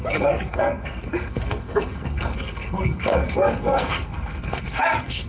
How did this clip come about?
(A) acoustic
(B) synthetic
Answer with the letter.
B